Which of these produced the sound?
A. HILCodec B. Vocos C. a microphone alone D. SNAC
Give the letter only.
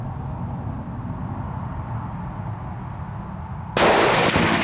C